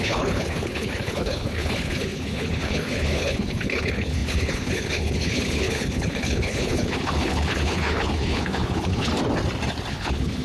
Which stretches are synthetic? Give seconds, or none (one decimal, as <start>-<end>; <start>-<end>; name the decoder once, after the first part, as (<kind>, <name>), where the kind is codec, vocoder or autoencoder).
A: 0.0-9.1 (codec, HILCodec); 9.9-10.4